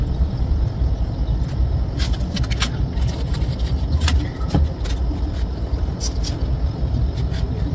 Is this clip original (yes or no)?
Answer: yes